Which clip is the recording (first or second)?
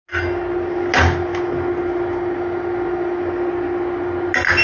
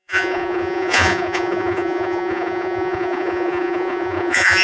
first